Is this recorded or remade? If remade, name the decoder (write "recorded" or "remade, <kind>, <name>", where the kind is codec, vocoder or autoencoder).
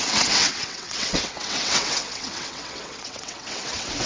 remade, vocoder, WaveNeXt